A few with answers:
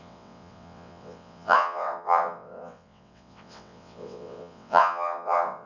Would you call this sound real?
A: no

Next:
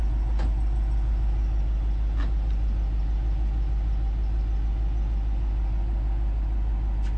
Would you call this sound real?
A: yes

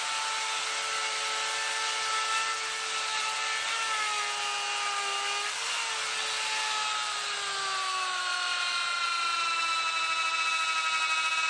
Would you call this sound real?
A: yes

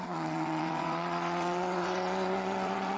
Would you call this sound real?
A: no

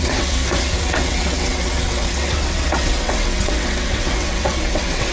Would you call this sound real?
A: no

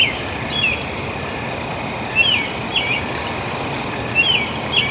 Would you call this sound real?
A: yes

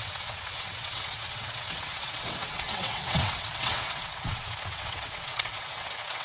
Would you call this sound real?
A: no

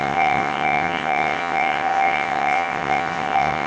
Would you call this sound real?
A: no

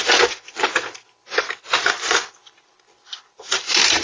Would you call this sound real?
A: yes